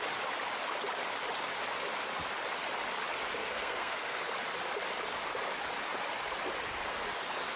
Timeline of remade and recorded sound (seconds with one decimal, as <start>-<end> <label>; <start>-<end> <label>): 0.0-3.4 recorded; 3.4-4.2 remade; 4.2-7.6 recorded